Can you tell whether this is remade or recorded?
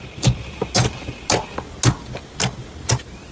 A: recorded